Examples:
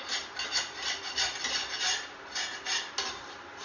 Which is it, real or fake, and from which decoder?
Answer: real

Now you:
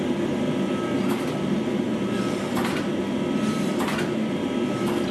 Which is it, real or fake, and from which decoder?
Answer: real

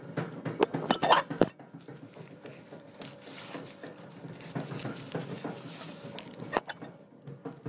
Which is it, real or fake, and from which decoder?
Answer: real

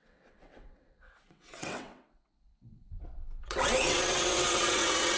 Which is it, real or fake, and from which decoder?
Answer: fake, vocoder, WaveNeXt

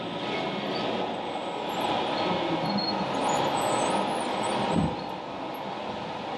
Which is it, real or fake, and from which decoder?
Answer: real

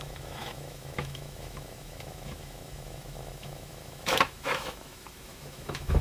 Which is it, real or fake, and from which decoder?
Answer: fake, autoencoder, DAC-VAE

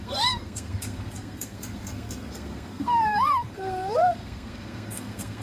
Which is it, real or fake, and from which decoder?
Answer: fake, codec, SNAC